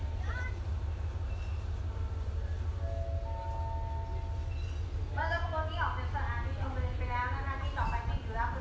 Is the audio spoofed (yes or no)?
no